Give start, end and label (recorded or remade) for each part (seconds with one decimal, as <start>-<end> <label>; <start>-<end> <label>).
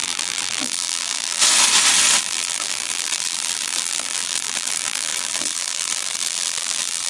0.0-1.4 remade; 1.4-2.2 recorded; 2.2-7.1 remade